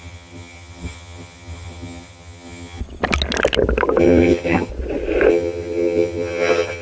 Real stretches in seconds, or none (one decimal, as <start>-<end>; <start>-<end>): 2.8-4.0; 4.7-5.3